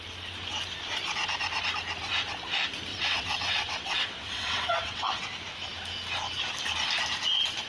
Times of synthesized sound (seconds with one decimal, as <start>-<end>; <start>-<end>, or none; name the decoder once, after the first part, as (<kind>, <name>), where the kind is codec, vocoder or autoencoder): 2.9-5.3 (vocoder, WaveNeXt)